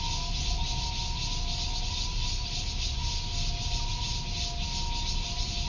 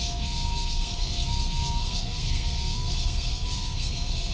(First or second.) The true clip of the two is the first